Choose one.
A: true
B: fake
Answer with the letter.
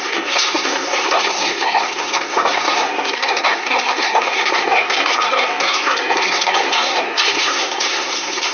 B